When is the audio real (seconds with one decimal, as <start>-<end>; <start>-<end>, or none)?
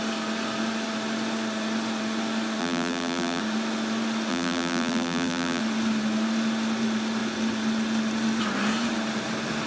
0.0-2.6; 3.4-4.3; 5.6-9.7